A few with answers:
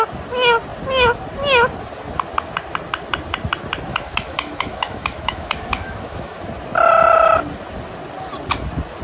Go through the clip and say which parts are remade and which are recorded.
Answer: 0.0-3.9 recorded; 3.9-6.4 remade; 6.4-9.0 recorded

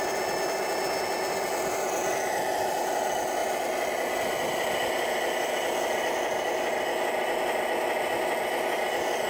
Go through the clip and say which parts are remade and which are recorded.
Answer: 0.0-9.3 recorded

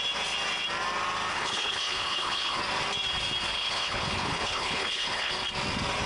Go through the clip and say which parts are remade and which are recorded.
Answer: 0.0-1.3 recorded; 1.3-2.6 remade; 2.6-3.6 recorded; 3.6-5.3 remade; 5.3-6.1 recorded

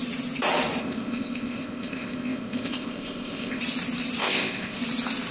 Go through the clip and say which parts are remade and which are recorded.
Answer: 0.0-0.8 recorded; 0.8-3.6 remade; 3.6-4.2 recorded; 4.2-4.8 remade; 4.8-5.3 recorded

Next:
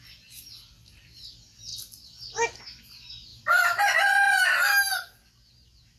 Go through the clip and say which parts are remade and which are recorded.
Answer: 0.0-6.0 recorded